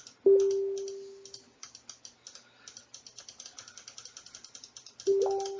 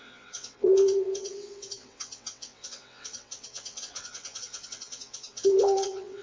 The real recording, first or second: first